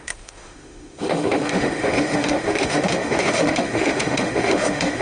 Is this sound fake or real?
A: fake